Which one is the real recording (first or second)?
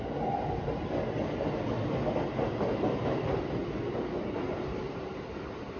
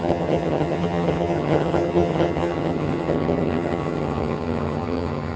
first